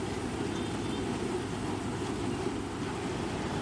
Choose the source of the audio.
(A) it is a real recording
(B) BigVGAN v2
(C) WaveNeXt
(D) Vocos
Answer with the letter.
A